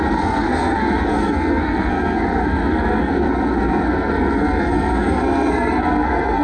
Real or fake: fake